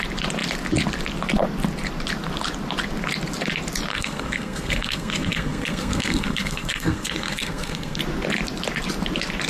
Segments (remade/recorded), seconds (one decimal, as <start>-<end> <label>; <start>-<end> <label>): 0.0-3.9 recorded; 3.9-8.0 remade; 8.0-9.5 recorded